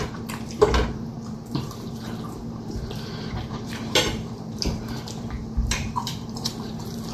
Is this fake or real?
fake